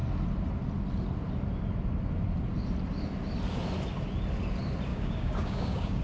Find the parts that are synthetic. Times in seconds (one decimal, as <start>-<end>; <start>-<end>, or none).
4.9-6.0